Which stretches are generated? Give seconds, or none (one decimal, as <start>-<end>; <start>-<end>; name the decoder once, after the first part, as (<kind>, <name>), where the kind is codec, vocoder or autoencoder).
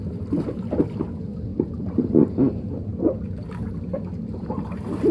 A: 1.5-2.1 (vocoder, BigVGAN v2)